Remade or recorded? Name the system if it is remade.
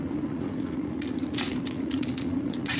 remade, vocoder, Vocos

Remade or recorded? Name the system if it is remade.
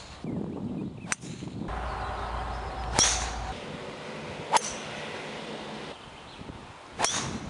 recorded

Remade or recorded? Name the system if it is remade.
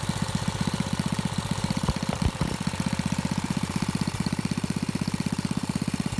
remade, vocoder, BigVGAN v2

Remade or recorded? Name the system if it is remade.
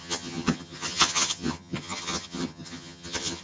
remade, vocoder, HiFi-GAN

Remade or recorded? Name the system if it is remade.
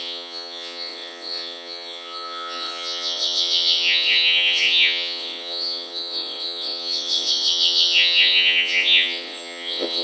remade, vocoder, WaveNeXt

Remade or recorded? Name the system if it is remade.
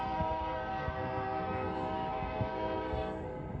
remade, codec, SNAC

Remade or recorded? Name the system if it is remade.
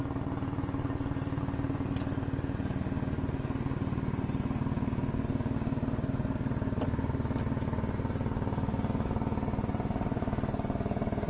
recorded